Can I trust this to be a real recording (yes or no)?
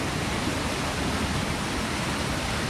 yes